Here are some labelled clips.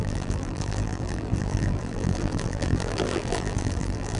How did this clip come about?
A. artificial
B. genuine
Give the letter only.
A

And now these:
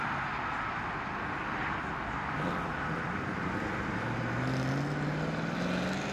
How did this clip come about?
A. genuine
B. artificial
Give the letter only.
A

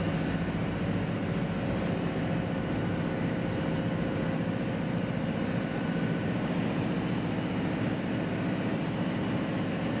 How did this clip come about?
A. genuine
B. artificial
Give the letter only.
A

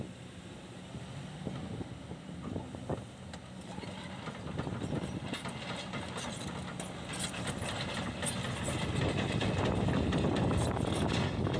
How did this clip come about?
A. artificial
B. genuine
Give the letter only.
B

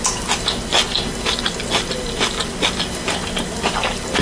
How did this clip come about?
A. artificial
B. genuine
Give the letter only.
B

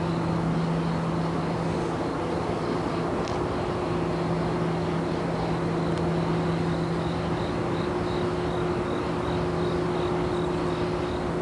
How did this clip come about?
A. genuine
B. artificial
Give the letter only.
A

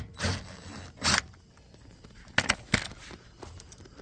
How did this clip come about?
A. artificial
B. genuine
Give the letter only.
B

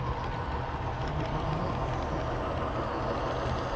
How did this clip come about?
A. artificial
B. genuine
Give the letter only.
B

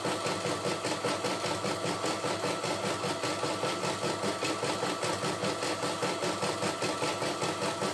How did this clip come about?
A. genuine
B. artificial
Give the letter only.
A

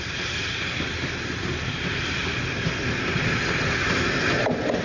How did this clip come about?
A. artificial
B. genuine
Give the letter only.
B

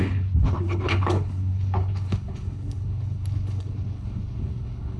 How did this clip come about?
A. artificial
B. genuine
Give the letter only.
A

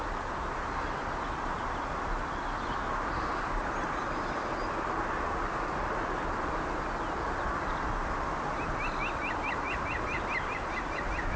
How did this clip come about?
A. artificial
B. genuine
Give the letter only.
B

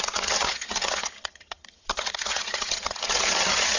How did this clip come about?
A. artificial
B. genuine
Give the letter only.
A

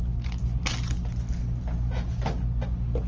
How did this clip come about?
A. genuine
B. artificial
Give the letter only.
A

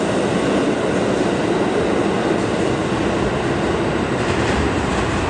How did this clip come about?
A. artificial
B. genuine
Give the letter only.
B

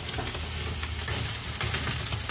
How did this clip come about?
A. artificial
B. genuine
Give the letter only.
B